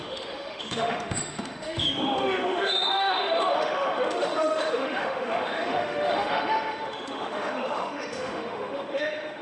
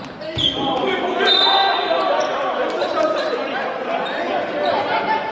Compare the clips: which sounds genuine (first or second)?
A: second